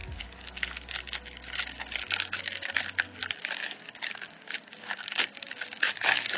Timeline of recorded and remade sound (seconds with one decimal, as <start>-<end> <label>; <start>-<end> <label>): 0.0-2.4 recorded; 2.4-3.2 remade; 3.2-4.0 recorded; 4.0-6.4 remade